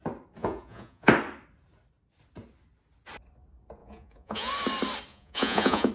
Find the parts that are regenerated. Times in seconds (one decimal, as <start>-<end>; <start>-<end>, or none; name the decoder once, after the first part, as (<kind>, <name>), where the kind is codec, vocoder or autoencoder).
0.4-1.1 (vocoder, Vocos); 3.8-4.5; 5.1-5.9